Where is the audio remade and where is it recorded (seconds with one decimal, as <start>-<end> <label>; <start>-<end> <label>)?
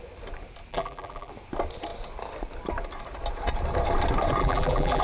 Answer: 0.0-0.7 recorded; 0.7-1.3 remade; 1.3-4.4 recorded; 4.4-5.0 remade